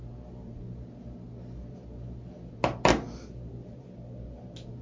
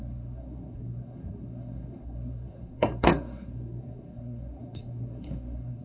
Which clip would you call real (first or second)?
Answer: first